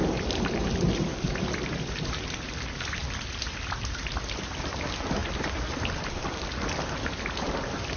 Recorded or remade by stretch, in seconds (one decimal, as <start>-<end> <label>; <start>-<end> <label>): 0.0-8.0 recorded